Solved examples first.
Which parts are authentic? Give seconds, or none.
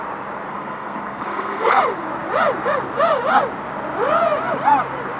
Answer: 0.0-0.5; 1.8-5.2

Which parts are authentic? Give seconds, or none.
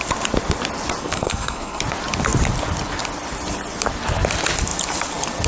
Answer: 0.0-1.0; 1.8-5.5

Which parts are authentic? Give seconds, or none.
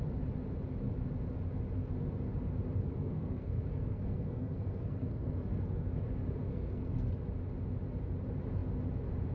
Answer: 0.0-2.9; 6.0-6.5; 7.1-9.3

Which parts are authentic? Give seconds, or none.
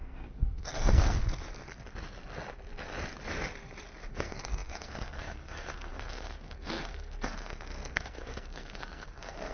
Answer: 1.2-4.1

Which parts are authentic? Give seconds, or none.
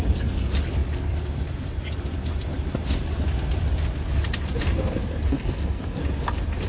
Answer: 0.0-5.3; 6.0-6.7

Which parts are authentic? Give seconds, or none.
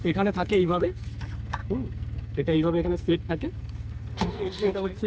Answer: none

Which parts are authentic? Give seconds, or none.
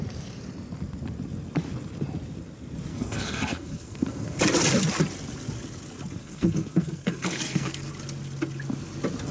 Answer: 0.0-2.9; 4.4-6.2; 7.9-9.3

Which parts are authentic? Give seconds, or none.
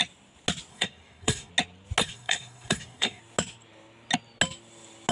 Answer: 0.0-0.7; 1.5-2.0; 3.2-5.1